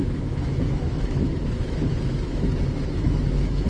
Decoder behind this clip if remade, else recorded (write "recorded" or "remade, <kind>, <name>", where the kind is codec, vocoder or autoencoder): remade, autoencoder, DAC-VAE